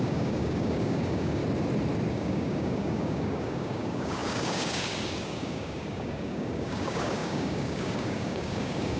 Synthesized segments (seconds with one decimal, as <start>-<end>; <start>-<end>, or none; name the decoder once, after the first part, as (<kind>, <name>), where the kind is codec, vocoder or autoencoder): 0.0-1.4 (codec, DAC); 2.1-9.0